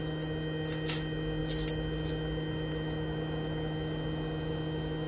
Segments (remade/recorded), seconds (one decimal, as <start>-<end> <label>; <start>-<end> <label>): 0.0-5.1 recorded